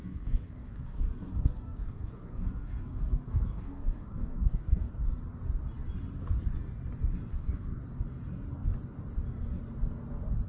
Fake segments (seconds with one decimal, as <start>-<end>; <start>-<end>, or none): 0.0-4.9; 7.3-7.8